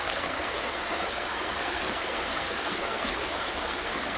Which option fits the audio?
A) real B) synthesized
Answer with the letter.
B